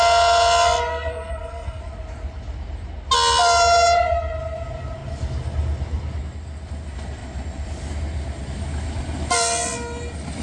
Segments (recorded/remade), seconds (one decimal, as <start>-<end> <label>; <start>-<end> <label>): 0.0-0.9 recorded; 0.9-1.8 remade; 1.8-10.4 recorded